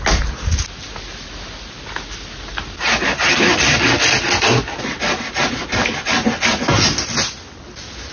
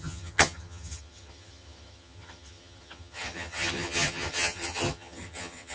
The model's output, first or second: second